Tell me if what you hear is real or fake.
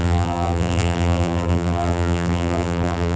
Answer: fake